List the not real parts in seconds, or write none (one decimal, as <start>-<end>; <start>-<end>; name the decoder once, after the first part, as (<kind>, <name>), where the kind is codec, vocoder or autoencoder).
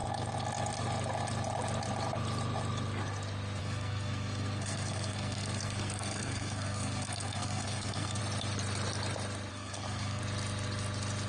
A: 3.6-8.2 (codec, SNAC); 9.5-10.2